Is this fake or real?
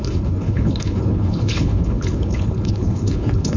fake